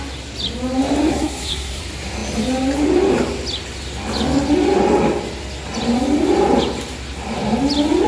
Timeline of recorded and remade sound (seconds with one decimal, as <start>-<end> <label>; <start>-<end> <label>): 0.0-1.1 recorded; 1.1-1.8 remade; 1.8-8.1 recorded